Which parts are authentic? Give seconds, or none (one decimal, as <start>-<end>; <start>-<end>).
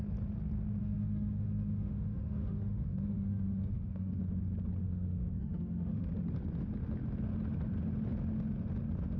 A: 0.0-0.8; 4.2-4.8; 6.1-9.2